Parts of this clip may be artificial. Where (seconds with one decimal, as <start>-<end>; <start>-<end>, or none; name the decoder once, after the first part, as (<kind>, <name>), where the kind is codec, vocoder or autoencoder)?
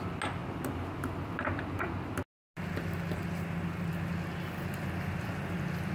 none